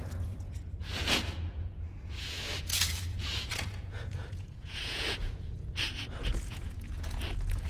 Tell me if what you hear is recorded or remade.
remade